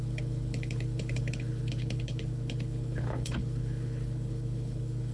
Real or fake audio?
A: fake